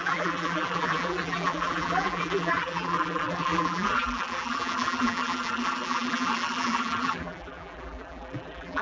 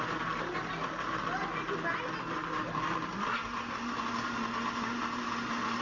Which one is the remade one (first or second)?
first